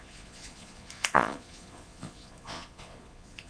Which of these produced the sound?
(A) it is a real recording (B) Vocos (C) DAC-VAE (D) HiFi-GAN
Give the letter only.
B